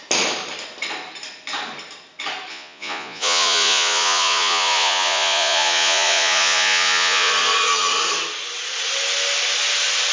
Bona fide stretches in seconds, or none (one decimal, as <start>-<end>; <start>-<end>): 0.0-2.5; 7.3-10.1